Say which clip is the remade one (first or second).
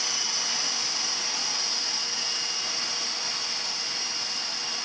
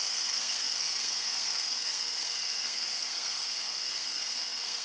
second